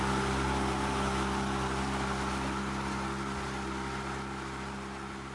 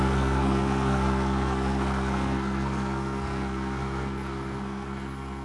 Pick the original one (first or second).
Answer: first